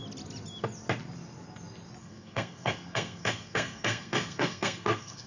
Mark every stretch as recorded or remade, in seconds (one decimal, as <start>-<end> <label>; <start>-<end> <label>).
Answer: 0.0-2.0 recorded; 2.0-5.3 remade